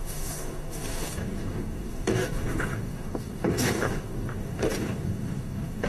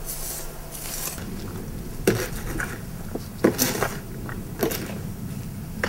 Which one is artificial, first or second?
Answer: first